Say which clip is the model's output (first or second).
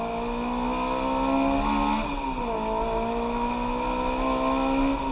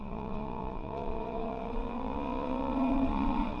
second